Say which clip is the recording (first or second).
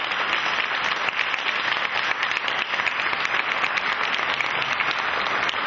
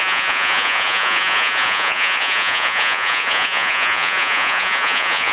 first